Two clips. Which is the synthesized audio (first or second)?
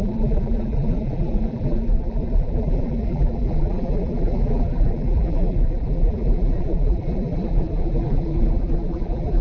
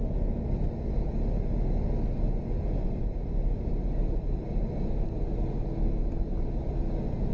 first